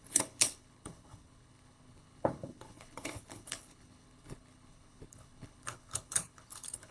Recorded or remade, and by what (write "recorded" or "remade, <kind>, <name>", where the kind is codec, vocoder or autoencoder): remade, codec, HILCodec